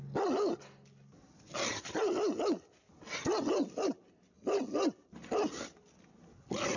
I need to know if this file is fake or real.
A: real